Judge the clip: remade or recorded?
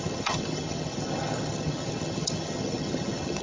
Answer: remade